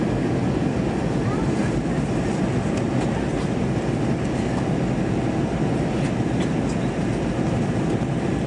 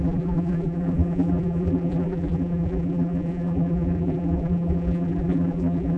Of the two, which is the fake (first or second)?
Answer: second